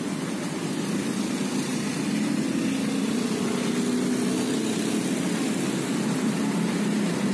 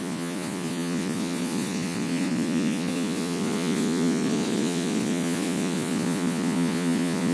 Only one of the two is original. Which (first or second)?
first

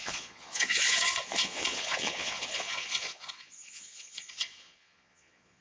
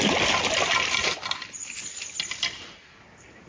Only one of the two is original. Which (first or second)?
second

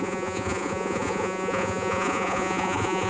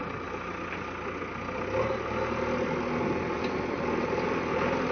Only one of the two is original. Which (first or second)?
second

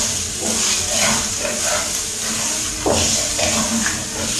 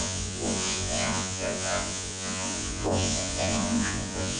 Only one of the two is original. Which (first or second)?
first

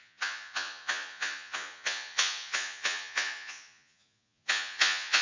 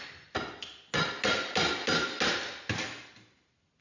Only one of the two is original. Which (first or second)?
second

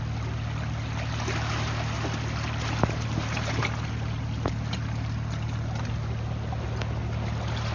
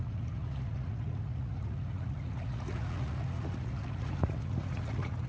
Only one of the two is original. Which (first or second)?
first